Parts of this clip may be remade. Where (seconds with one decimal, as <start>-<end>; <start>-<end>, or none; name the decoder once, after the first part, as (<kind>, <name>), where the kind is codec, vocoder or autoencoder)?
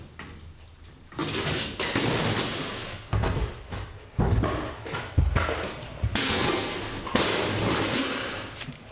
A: 2.8-3.4 (codec, SNAC); 6.2-6.8